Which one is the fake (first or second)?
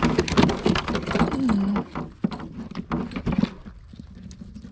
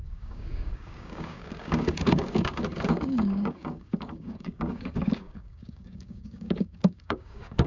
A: second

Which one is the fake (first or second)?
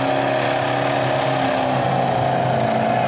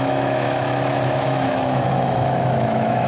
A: second